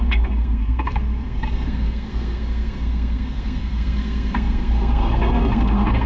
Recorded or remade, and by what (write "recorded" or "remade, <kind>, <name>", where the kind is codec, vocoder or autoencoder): remade, codec, SNAC